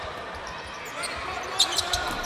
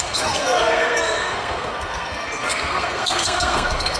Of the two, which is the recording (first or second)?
first